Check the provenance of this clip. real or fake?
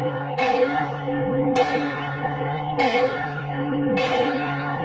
fake